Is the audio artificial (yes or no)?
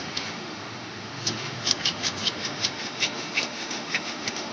yes